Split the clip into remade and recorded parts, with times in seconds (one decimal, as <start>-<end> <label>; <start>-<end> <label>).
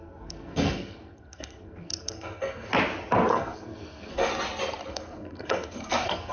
0.0-2.7 remade; 2.7-3.3 recorded; 3.3-4.3 remade; 4.3-4.9 recorded; 4.9-6.3 remade